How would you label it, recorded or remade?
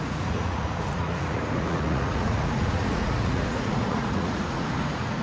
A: remade